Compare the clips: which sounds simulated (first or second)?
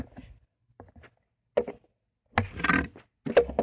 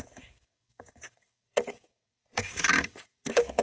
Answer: second